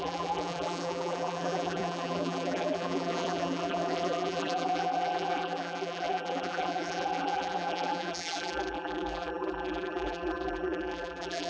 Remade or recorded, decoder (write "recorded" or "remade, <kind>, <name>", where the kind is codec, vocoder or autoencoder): remade, vocoder, BigVGAN v2